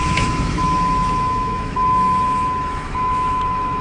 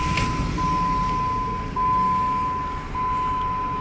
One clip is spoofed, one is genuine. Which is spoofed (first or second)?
first